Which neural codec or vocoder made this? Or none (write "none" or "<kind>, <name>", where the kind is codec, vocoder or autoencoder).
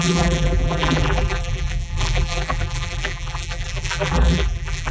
vocoder, BigVGAN v2